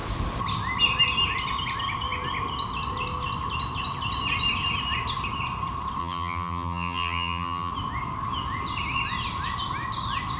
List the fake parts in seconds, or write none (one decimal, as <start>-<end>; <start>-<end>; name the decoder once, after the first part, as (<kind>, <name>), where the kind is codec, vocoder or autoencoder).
6.0-7.7 (vocoder, BigVGAN v2)